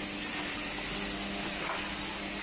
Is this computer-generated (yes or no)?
no